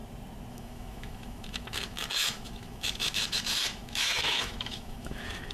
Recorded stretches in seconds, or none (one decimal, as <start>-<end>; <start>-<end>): 0.0-0.5